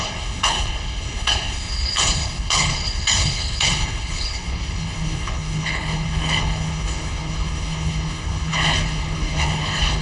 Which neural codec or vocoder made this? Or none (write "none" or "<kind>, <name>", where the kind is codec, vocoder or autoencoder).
codec, HILCodec